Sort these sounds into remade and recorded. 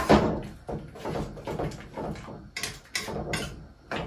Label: recorded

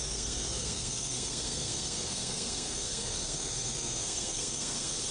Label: remade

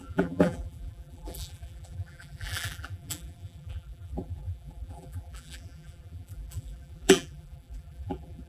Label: remade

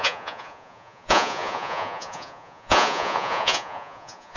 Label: remade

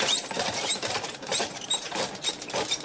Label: remade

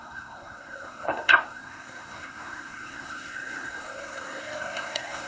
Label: remade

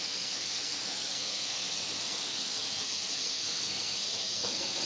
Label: remade